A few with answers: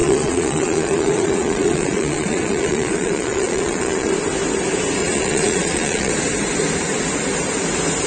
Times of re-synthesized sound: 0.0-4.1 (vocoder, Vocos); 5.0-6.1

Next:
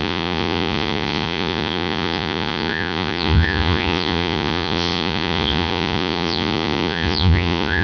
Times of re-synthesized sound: 0.0-7.8 (vocoder, Vocos)

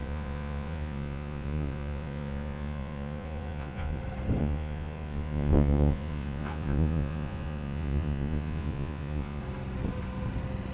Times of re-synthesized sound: 0.0-4.0 (vocoder, Vocos); 4.4-9.4

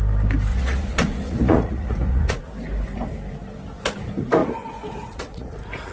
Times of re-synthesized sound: 0.5-2.4 (vocoder, Vocos); 4.4-5.5

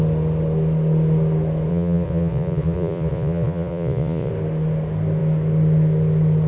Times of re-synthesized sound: 1.7-4.3 (vocoder, Vocos)